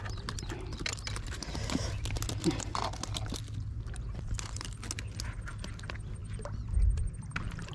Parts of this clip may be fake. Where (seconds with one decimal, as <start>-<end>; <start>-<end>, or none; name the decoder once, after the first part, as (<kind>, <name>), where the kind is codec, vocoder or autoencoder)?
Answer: none